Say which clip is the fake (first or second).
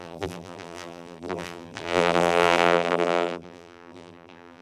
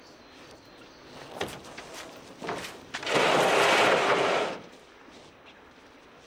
first